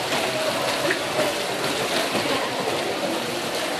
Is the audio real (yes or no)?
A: yes